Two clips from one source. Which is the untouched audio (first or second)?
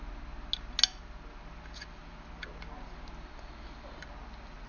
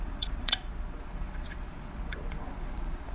first